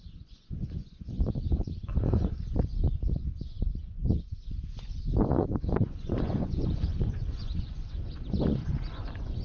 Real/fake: fake